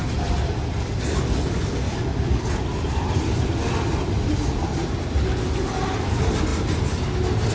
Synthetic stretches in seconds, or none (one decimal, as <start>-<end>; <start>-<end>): none